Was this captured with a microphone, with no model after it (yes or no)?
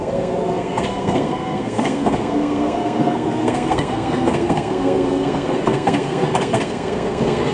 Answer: no